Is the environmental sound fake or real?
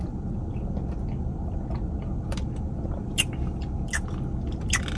real